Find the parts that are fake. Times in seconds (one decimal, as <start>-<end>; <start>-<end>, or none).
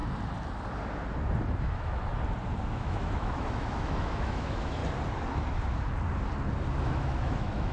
1.6-2.1; 2.7-4.8; 6.8-7.7